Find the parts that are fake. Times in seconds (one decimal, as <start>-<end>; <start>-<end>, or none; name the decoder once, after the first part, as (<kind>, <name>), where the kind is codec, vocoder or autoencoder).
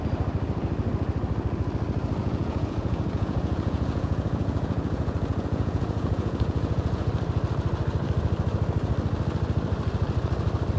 2.2-7.1 (vocoder, Vocos)